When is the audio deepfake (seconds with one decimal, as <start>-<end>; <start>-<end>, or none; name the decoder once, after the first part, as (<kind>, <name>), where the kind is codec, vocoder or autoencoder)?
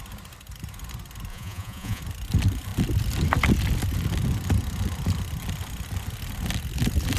1.3-2.0 (vocoder, Vocos)